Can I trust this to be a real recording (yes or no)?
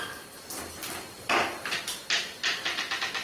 yes